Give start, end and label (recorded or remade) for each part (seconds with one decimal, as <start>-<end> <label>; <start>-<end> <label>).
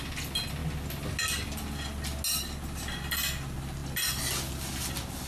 0.0-5.3 recorded